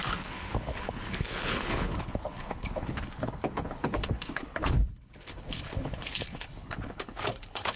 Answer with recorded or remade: remade